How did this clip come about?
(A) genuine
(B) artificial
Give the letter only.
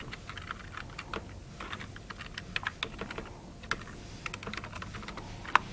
A